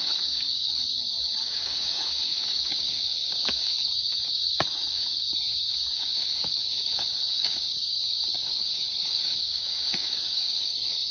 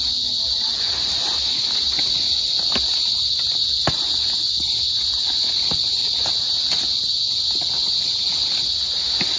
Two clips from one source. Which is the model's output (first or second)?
first